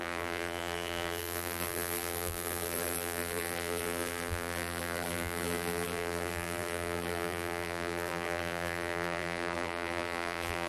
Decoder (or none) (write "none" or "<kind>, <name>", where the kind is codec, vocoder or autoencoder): vocoder, BigVGAN v2